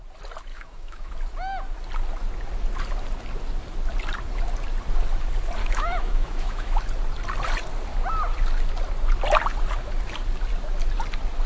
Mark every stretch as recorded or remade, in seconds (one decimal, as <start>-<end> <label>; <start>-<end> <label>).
0.0-0.5 recorded; 0.5-1.1 remade; 1.1-5.6 recorded; 5.6-6.8 remade; 6.8-11.5 recorded